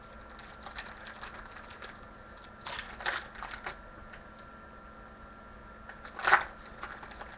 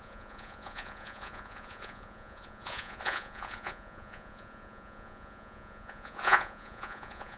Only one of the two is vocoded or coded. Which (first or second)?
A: second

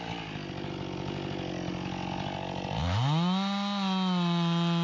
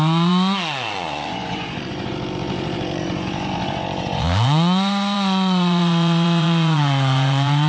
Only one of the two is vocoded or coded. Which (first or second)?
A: second